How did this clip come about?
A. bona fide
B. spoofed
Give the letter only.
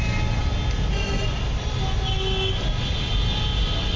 A